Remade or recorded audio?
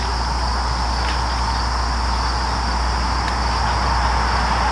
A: recorded